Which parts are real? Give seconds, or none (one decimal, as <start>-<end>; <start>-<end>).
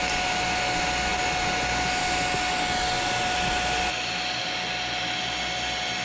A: 0.0-6.0